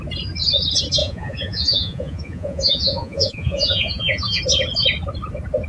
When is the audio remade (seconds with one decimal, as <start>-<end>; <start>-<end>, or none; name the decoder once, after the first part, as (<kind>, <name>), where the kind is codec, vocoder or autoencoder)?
1.0-4.4 (vocoder, Vocos)

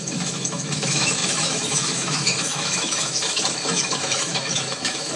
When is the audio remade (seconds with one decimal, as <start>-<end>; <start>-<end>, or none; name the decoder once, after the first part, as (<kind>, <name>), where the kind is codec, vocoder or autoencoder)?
0.0-5.2 (autoencoder, DAC-VAE)

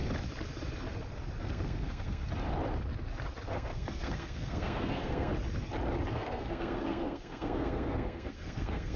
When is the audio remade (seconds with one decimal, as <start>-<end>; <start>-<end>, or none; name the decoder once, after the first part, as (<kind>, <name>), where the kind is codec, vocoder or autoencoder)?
1.4-2.2 (codec, SNAC); 3.5-5.3; 6.1-9.0